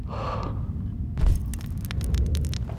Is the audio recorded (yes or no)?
yes